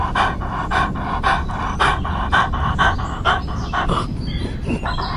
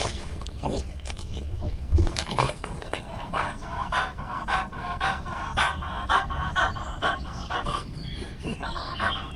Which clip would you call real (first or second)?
first